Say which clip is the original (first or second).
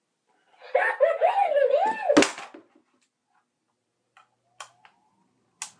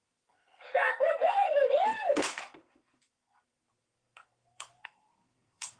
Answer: first